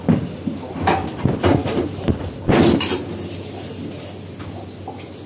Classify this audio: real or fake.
real